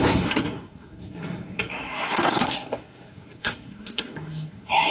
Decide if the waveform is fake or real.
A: fake